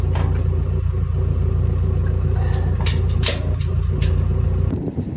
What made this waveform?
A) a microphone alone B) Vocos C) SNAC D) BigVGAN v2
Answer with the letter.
A